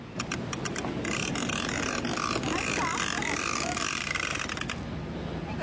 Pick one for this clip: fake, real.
real